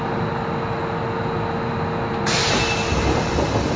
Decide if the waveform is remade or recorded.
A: recorded